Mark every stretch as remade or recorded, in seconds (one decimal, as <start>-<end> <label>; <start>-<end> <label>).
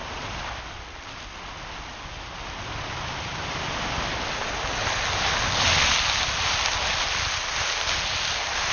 0.0-0.6 remade; 0.6-8.7 recorded